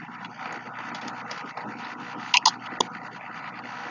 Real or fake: real